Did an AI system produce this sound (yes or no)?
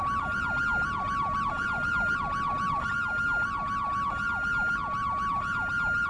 no